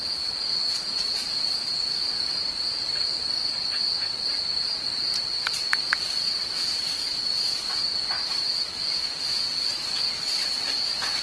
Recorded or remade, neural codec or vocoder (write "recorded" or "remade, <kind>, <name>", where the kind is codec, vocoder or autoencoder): recorded